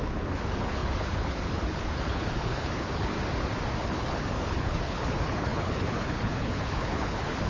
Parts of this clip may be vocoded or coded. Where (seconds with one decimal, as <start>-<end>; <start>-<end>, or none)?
0.0-3.1; 3.8-7.5